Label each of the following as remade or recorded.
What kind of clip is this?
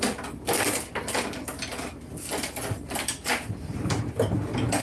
recorded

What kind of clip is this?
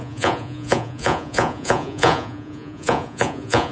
remade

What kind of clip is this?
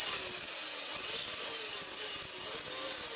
recorded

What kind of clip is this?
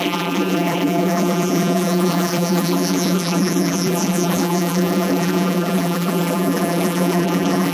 remade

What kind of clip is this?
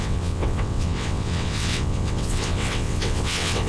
remade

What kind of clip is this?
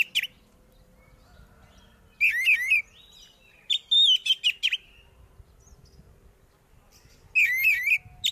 recorded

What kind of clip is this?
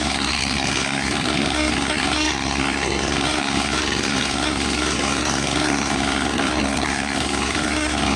remade